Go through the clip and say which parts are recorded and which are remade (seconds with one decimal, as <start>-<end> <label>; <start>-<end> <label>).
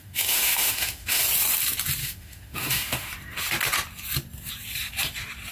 0.0-1.2 remade; 1.2-2.0 recorded; 2.0-3.1 remade; 3.1-5.5 recorded